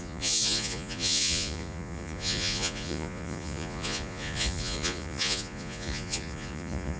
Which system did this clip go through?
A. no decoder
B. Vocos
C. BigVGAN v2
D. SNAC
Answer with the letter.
B